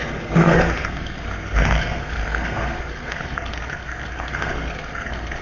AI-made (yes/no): yes